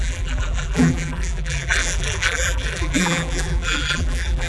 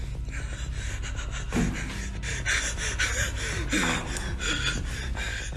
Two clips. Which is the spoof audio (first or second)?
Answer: first